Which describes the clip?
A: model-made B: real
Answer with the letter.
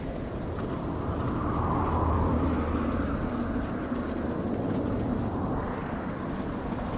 B